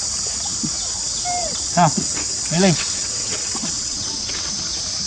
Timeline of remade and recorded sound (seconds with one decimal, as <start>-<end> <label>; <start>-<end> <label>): 0.0-1.4 recorded; 1.4-4.5 remade; 4.5-5.1 recorded